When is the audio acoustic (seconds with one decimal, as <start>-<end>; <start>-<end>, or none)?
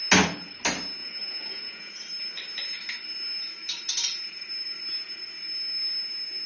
0.0-1.0; 1.9-6.5